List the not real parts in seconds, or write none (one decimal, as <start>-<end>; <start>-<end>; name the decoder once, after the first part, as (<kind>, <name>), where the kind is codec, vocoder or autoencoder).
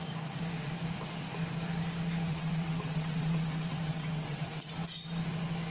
2.3-4.7 (vocoder, WaveNeXt)